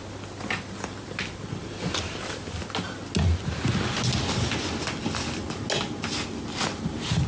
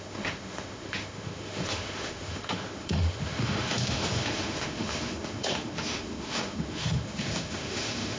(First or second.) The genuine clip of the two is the first